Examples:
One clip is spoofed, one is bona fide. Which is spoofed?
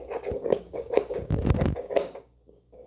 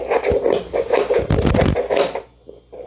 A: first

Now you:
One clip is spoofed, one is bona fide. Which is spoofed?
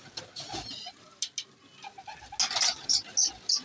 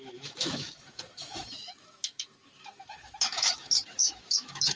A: second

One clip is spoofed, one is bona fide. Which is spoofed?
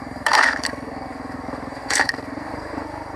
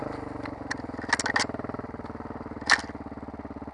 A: first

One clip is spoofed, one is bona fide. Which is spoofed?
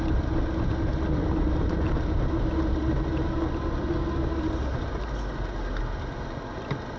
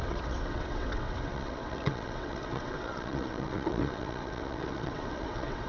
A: second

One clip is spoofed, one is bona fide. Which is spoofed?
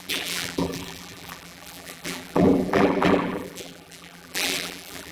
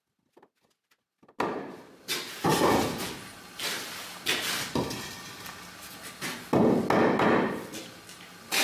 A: first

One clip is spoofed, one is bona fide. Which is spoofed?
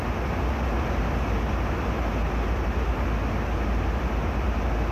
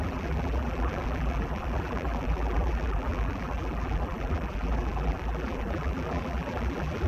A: second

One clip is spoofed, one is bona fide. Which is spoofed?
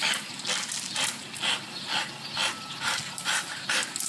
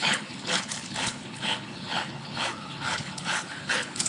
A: second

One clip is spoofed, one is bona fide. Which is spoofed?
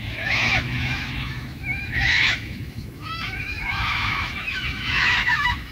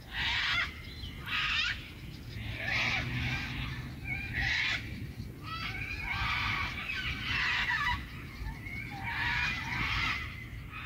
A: first